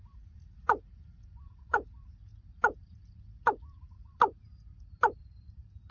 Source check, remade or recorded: remade